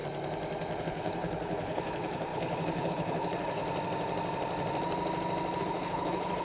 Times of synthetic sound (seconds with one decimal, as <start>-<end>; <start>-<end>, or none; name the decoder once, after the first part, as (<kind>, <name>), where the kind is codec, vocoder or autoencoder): 0.8-3.6 (codec, HILCodec); 5.6-6.4